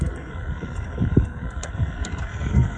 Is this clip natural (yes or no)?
no